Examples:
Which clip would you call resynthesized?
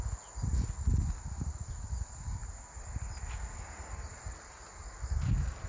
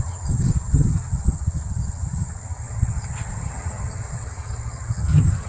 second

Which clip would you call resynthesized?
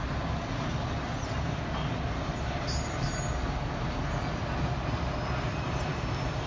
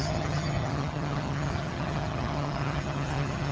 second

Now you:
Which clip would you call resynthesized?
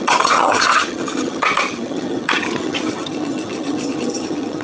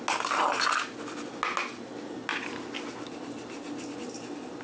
first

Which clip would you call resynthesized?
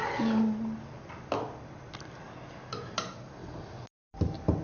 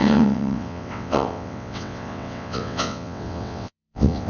second